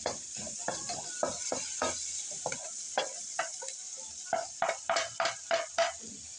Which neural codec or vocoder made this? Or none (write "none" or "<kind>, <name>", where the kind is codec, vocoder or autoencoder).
none